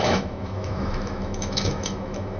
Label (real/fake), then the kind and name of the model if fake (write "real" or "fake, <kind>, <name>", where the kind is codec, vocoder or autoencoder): fake, autoencoder, DAC-VAE